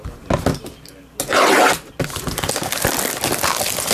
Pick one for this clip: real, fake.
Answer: real